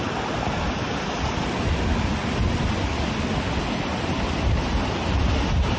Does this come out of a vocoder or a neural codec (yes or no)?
no